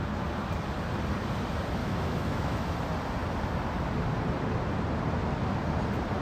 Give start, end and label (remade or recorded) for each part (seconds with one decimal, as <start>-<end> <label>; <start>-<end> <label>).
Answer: 0.0-1.8 recorded; 1.8-2.7 remade; 2.7-6.2 recorded